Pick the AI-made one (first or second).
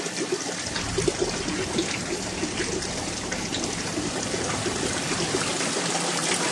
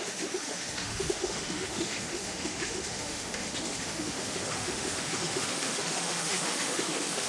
second